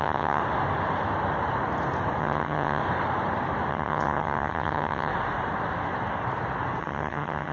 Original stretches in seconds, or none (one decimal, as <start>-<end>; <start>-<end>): 0.4-2.2; 2.8-3.7; 5.1-6.8